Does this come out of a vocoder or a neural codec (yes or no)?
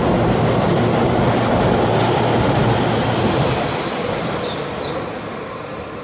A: no